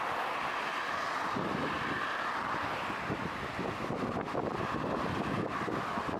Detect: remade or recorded recorded